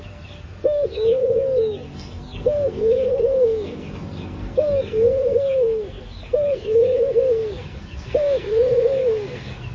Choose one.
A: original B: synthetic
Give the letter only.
B